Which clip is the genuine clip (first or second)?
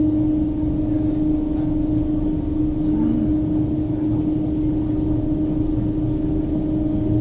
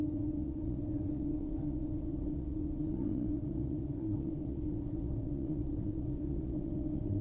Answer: first